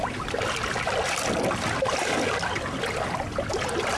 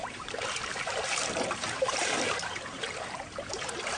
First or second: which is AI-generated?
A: second